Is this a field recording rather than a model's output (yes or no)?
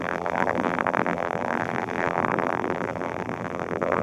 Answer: no